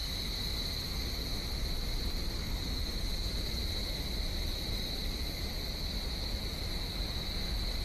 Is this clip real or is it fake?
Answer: real